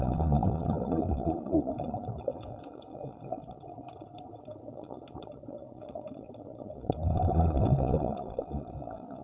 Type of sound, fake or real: fake